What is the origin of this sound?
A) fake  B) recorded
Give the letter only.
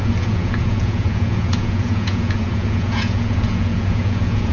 A